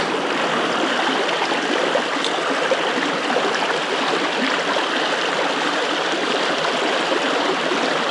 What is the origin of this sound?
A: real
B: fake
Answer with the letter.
A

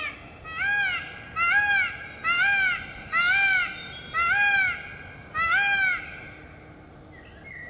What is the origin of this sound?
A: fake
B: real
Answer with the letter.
B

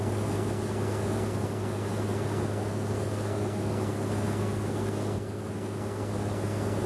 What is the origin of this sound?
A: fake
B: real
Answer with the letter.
A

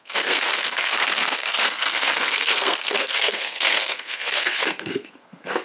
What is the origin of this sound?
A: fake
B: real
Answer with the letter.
A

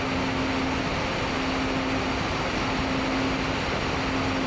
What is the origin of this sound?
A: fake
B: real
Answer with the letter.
B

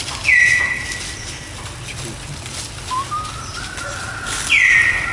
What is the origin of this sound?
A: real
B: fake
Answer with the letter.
A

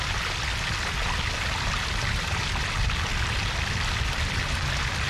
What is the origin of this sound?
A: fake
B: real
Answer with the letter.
B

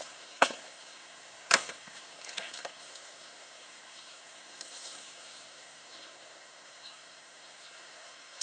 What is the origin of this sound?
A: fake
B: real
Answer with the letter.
A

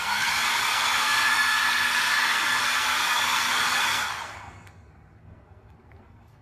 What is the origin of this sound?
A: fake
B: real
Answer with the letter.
A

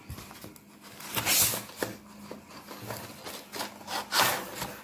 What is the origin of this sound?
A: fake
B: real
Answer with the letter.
B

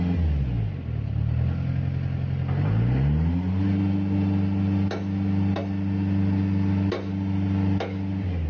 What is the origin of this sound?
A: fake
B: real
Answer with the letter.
B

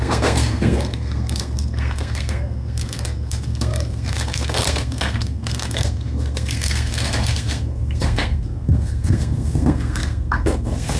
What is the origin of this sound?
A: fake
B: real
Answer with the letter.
A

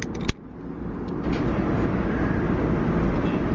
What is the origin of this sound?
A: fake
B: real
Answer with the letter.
B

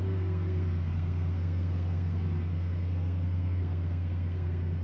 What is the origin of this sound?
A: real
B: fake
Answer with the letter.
B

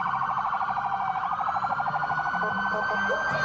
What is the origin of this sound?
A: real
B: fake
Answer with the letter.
A